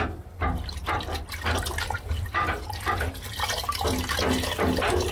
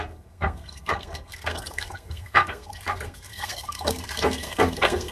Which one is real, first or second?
first